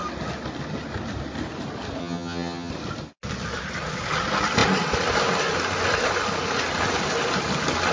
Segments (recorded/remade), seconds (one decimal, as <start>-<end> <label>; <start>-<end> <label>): 0.0-2.0 recorded; 2.0-2.7 remade; 2.7-7.9 recorded

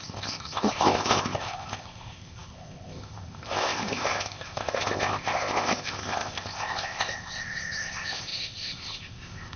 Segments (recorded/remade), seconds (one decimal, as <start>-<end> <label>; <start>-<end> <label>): 0.0-9.6 remade

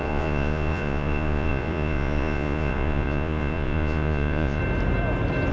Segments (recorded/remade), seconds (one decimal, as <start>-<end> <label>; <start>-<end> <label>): 0.0-4.6 remade; 4.6-5.5 recorded

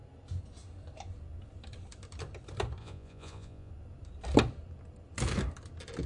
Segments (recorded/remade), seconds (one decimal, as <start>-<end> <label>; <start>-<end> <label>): 0.0-2.8 recorded; 2.8-3.7 remade; 3.7-6.1 recorded

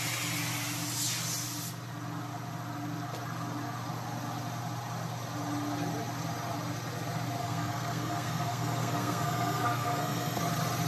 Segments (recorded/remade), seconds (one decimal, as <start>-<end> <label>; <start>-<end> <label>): 0.0-7.4 recorded; 7.4-10.4 remade; 10.4-10.9 recorded

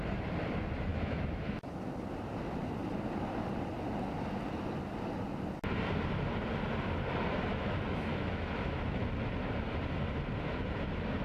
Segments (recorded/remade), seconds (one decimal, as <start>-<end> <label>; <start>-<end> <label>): 0.0-0.9 recorded; 0.9-1.7 remade; 1.7-7.5 recorded; 7.5-9.0 remade; 9.0-11.2 recorded

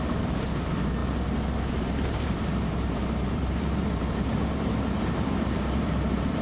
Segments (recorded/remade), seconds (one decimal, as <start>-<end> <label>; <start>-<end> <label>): 0.0-1.0 remade; 1.0-1.8 recorded; 1.8-6.4 remade